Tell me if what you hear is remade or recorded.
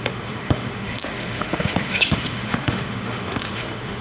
remade